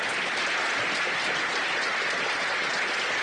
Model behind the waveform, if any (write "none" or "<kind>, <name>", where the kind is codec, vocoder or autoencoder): none